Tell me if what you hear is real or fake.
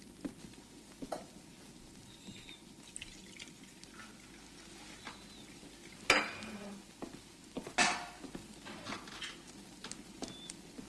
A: real